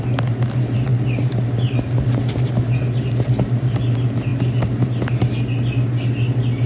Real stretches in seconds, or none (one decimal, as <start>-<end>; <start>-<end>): 0.0-6.7